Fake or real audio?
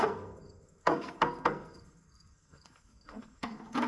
fake